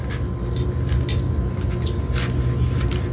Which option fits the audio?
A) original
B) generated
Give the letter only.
A